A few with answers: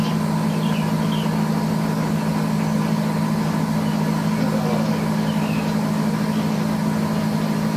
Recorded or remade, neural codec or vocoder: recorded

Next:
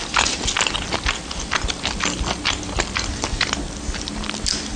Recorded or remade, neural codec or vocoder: recorded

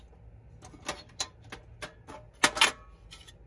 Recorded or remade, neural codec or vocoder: recorded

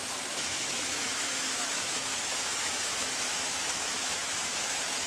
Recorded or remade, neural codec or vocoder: remade, autoencoder, DAC-VAE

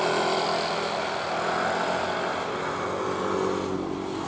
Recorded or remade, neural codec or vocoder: recorded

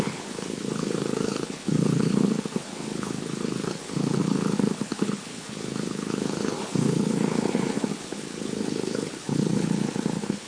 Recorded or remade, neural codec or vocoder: remade, codec, HILCodec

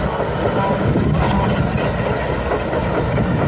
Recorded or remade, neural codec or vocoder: recorded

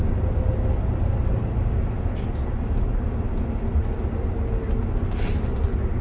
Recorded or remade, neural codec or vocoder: recorded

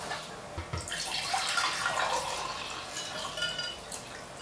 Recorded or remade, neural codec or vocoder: recorded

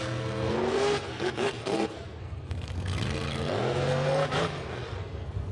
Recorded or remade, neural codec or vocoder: remade, codec, SNAC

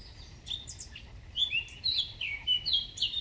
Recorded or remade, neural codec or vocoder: recorded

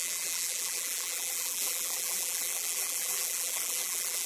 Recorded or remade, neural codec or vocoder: remade, vocoder, BigVGAN v2